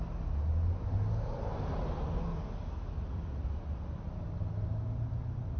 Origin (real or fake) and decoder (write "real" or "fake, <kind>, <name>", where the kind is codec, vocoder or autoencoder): real